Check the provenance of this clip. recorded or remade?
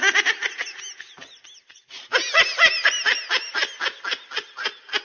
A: recorded